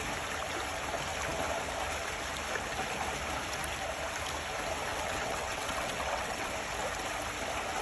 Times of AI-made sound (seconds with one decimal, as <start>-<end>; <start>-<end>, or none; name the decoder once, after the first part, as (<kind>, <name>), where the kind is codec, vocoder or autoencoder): 4.9-6.5 (vocoder, WaveNeXt)